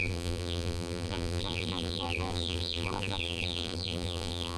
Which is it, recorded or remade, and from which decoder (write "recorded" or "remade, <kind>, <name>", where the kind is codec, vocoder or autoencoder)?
remade, vocoder, BigVGAN v2